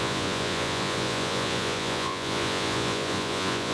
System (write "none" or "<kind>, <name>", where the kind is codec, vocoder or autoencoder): vocoder, Vocos